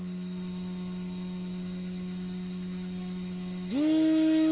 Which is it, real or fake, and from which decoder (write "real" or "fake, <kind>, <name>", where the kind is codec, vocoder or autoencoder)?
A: fake, autoencoder, DAC-VAE